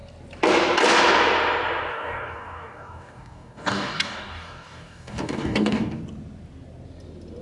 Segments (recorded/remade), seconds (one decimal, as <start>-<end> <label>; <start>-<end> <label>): 0.0-1.9 recorded; 1.9-6.0 remade; 6.0-7.4 recorded